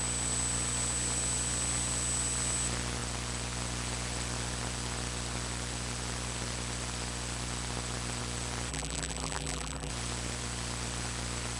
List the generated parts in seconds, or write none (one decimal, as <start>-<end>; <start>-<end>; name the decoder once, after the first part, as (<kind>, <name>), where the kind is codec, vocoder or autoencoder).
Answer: 8.7-9.9 (vocoder, BigVGAN v2)